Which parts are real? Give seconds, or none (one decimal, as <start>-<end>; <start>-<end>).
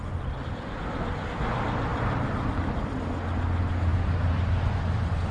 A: 0.0-5.3